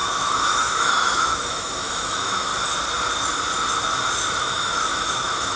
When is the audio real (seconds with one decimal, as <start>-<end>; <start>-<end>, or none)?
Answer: 2.5-4.4